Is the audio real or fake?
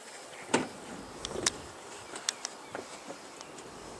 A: real